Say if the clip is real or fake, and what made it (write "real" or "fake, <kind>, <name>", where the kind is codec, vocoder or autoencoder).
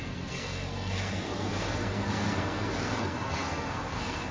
fake, codec, SNAC